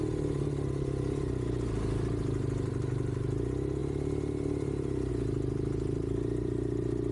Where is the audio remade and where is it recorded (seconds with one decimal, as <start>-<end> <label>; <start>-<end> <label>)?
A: 0.0-3.8 recorded; 3.8-5.1 remade; 5.1-7.1 recorded